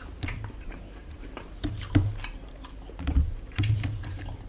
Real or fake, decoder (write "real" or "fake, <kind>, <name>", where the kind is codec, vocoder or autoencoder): fake, vocoder, BigVGAN v2